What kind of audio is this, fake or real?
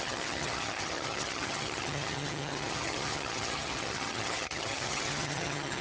fake